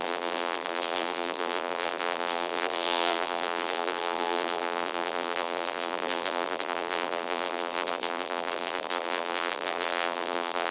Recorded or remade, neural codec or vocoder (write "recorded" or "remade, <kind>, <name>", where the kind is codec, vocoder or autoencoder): remade, vocoder, BigVGAN v2